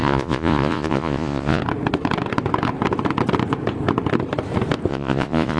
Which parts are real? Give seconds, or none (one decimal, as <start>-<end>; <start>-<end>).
1.6-4.9